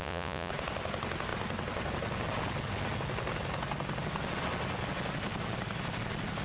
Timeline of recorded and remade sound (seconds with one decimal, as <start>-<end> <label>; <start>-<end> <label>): 0.0-0.5 remade; 0.5-6.4 recorded